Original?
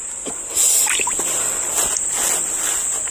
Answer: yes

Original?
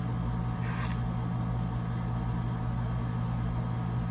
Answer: yes